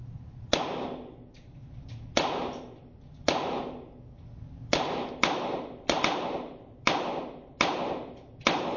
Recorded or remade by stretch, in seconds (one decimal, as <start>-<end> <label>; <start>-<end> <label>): 0.0-8.8 recorded

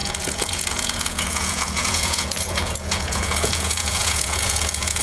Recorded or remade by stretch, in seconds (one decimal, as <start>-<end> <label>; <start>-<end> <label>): 0.0-5.0 remade

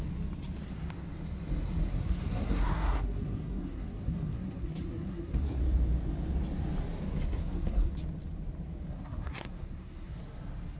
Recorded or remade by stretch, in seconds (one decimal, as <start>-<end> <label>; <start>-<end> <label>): 0.0-1.9 recorded; 1.9-5.6 remade; 5.6-7.4 recorded; 7.4-7.9 remade; 7.9-8.9 recorded; 8.9-10.2 remade; 10.2-10.8 recorded

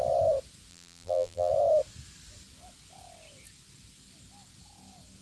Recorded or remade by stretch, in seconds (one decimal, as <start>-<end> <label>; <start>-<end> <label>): 0.0-0.7 recorded; 0.7-1.5 remade; 1.5-5.2 recorded